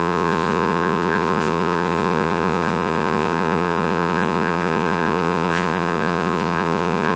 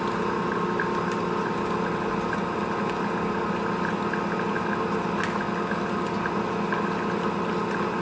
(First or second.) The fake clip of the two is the first